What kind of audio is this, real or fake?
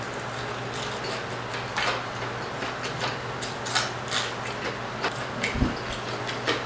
real